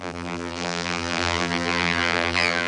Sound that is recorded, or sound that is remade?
remade